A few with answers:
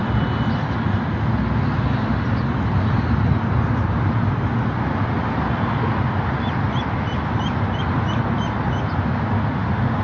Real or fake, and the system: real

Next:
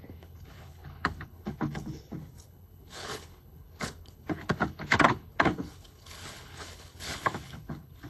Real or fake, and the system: fake, codec, HILCodec